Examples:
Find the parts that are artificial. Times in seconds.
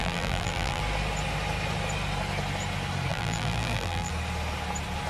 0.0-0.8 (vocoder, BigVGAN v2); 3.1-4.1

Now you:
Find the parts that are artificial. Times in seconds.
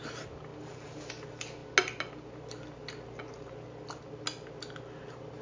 0.5-1.1 (vocoder, BigVGAN v2)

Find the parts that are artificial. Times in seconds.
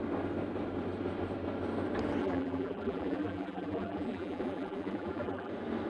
2.2-5.5 (vocoder, BigVGAN v2)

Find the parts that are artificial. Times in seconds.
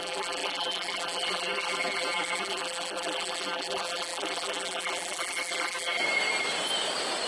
0.0-6.0 (vocoder, BigVGAN v2)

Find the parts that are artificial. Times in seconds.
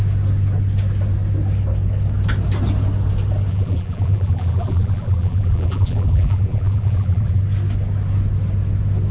3.5-7.4 (vocoder, BigVGAN v2)